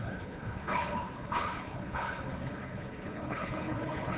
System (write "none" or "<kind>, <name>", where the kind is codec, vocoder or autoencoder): codec, HILCodec